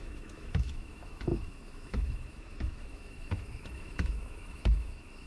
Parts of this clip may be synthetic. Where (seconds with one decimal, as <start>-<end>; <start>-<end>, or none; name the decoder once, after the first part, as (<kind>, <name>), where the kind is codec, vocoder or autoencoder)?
0.0-5.3 (autoencoder, DAC-VAE)